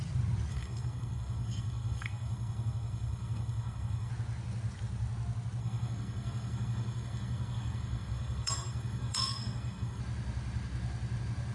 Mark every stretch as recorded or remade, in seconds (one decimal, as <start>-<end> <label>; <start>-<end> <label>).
0.0-0.5 recorded; 0.5-4.1 remade; 4.1-5.6 recorded; 5.6-10.0 remade; 10.0-11.5 recorded